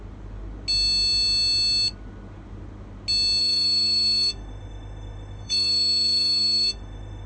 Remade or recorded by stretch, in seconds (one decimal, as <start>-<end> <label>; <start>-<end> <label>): 0.0-3.4 recorded; 3.4-7.3 remade

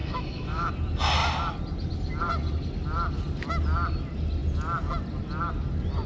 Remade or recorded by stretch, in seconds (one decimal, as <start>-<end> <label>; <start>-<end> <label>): 0.0-0.7 remade; 0.7-6.1 recorded

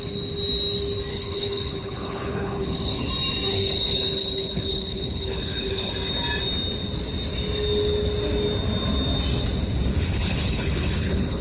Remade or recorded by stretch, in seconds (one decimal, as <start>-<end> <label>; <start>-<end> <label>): 0.0-1.1 recorded; 1.1-3.1 remade; 3.1-3.5 recorded; 3.5-5.9 remade; 5.9-9.9 recorded; 9.9-11.4 remade